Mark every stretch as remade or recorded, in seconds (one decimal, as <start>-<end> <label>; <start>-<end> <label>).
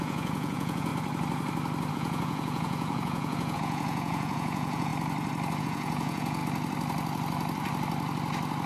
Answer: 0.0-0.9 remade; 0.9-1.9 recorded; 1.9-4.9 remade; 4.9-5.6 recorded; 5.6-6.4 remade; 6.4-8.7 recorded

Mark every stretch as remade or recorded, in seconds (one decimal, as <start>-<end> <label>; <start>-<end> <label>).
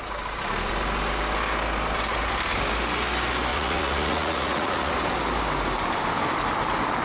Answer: 0.0-3.5 recorded; 3.5-4.9 remade; 4.9-7.0 recorded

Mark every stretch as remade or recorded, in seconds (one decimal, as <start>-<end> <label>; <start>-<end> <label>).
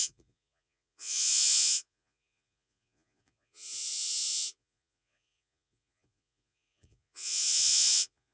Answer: 0.0-8.3 remade